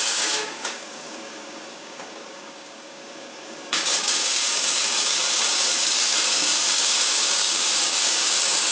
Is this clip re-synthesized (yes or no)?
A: yes